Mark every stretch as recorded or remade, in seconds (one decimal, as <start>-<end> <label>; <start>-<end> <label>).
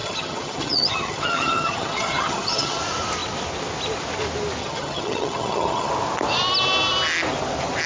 0.0-2.8 remade; 2.8-4.6 recorded; 4.6-5.9 remade; 5.9-7.9 recorded